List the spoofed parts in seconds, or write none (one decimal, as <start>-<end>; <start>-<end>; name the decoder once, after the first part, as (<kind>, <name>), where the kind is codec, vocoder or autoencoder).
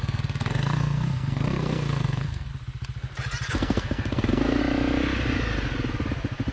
0.0-2.5 (codec, SNAC); 3.5-4.6